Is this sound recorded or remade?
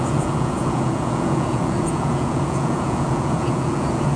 remade